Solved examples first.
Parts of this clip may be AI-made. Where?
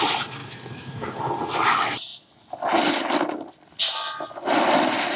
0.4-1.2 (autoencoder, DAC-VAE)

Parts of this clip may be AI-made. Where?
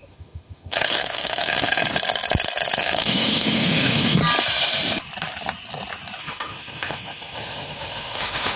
0.0-1.8 (autoencoder, DAC-VAE); 2.8-4.2; 6.2-8.6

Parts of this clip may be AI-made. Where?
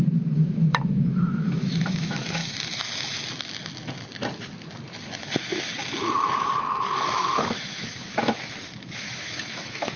0.0-2.4 (autoencoder, DAC-VAE); 7.1-10.0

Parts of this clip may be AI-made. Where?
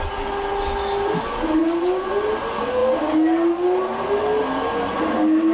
none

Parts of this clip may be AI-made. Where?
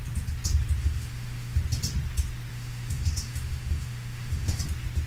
0.8-1.6 (autoencoder, DAC-VAE); 2.5-4.6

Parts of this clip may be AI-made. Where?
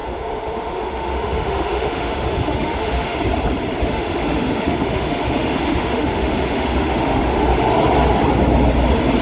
0.0-3.2 (autoencoder, DAC-VAE); 3.8-7.7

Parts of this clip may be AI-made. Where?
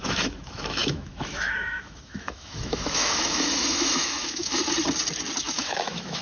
0.0-4.6 (autoencoder, DAC-VAE); 5.4-6.2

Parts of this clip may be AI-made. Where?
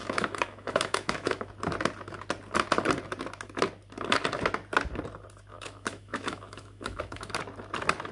0.0-1.5 (autoencoder, DAC-VAE); 5.5-7.3